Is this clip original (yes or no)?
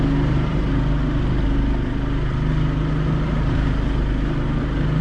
yes